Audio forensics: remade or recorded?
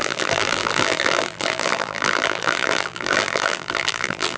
remade